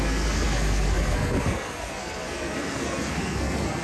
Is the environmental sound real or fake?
fake